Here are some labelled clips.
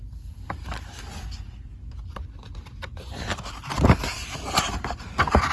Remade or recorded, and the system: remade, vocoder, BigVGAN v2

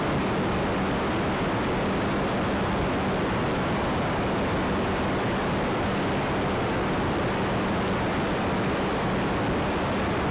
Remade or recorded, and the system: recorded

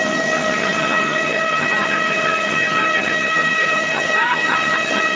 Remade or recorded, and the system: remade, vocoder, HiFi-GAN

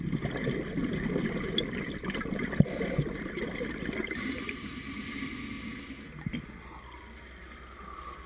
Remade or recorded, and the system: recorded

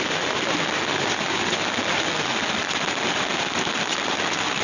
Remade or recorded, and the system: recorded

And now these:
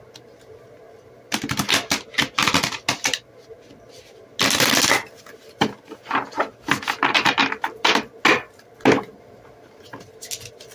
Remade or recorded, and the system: recorded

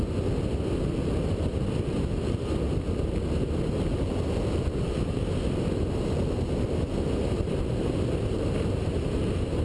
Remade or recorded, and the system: recorded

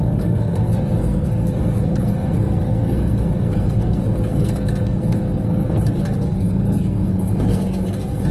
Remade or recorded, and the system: remade, codec, SNAC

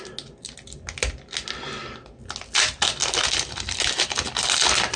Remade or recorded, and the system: recorded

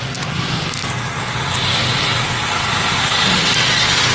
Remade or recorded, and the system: recorded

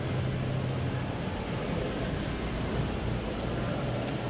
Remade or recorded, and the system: recorded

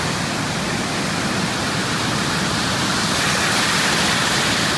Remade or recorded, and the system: recorded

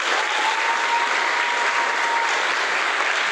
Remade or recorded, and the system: recorded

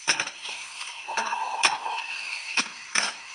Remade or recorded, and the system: remade, codec, SNAC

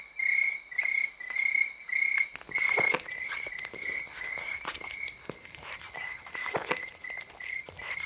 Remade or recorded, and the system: recorded